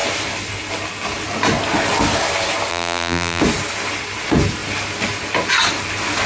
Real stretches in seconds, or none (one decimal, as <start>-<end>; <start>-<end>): 0.0-2.7; 3.4-6.3